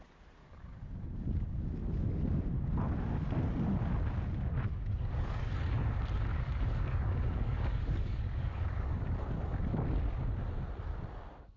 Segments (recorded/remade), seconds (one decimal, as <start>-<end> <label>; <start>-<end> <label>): 0.0-0.4 recorded; 0.4-2.7 remade; 2.7-4.7 recorded; 4.7-5.5 remade; 5.5-6.3 recorded; 6.3-9.1 remade; 9.1-11.6 recorded